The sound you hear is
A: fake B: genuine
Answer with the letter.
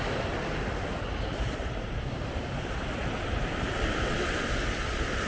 B